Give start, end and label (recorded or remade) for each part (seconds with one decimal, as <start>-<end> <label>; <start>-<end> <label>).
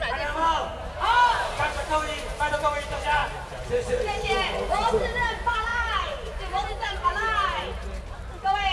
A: 0.0-5.7 recorded; 5.7-6.4 remade; 6.4-8.7 recorded